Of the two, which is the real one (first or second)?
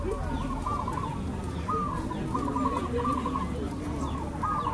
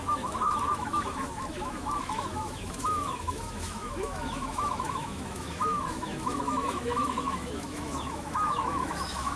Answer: first